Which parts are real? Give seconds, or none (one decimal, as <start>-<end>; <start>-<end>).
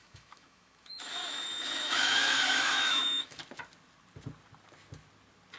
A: 3.4-5.6